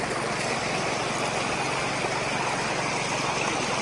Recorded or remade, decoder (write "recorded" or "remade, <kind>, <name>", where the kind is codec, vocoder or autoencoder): recorded